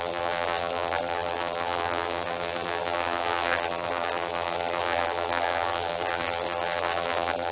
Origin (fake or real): fake